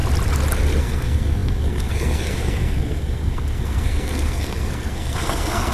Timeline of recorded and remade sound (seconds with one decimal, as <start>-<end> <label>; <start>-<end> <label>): 0.0-0.8 recorded; 0.8-5.7 remade